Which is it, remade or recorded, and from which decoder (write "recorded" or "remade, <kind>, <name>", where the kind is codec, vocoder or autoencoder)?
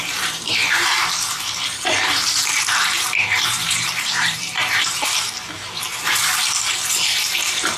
remade, vocoder, BigVGAN v2